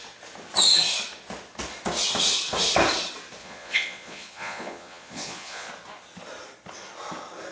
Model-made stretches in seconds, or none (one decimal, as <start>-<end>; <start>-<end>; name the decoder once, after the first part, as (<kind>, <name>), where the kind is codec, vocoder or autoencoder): 3.4-5.7 (vocoder, Vocos)